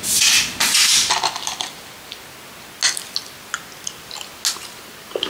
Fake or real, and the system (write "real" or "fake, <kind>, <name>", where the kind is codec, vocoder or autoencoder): real